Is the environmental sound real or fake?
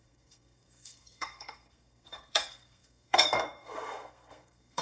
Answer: fake